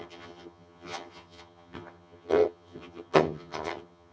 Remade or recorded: remade